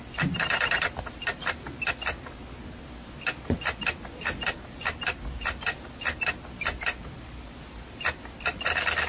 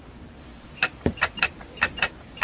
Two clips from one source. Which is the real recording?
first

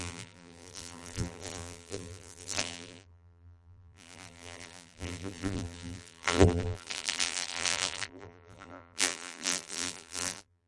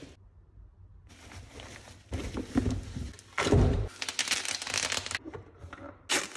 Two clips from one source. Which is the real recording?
second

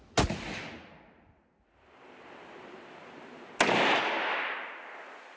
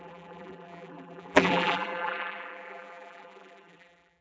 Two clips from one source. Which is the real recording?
first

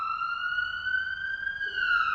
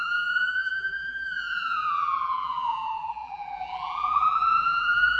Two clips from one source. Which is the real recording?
first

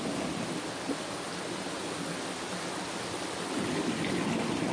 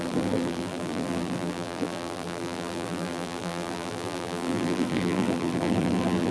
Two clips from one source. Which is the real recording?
first